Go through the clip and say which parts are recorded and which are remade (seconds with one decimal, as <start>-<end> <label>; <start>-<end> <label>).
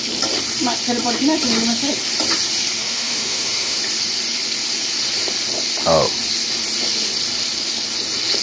0.0-2.8 recorded; 2.8-3.8 remade; 3.8-8.4 recorded